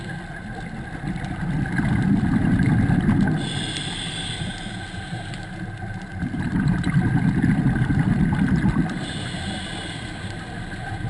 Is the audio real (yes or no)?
yes